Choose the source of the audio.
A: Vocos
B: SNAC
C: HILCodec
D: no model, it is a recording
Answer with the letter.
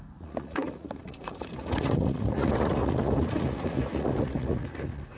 A